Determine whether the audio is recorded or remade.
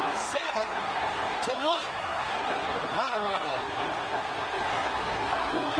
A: remade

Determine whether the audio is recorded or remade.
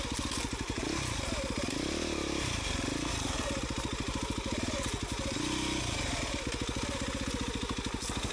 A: recorded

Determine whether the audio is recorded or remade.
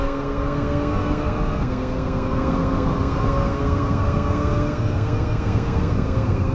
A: remade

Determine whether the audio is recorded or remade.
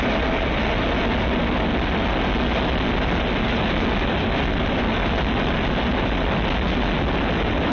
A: recorded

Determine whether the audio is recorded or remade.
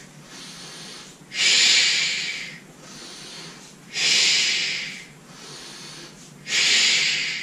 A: recorded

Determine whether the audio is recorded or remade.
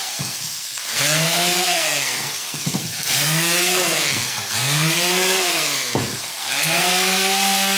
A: remade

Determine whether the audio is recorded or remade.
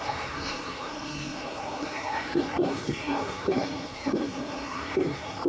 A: remade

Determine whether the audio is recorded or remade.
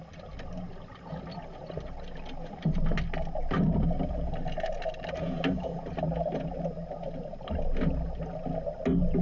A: recorded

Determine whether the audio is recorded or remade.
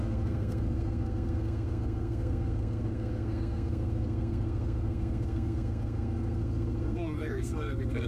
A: remade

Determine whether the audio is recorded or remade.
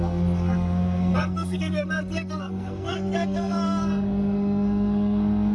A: remade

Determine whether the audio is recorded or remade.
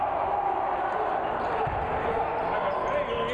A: recorded